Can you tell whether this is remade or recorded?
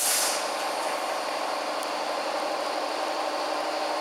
remade